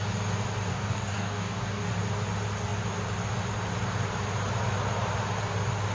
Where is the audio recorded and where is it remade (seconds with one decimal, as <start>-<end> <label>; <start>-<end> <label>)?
0.0-0.7 recorded; 0.7-1.9 remade; 1.9-5.9 recorded